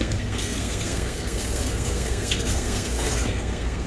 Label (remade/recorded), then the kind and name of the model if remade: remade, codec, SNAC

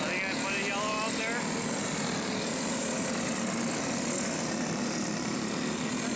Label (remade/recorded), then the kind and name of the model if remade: recorded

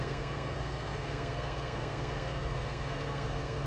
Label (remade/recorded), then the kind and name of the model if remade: remade, codec, SNAC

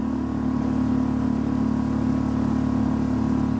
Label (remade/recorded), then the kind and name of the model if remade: recorded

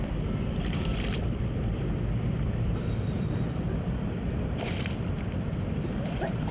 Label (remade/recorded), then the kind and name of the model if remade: remade, vocoder, BigVGAN v2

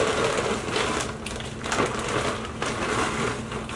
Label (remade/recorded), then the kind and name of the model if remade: recorded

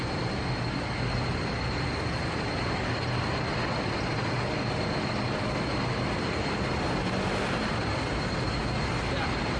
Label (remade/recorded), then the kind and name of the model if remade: recorded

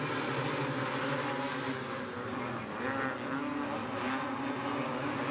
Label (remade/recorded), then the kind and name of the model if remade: recorded